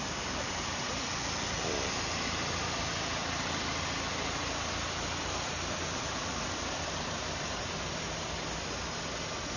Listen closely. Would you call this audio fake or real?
real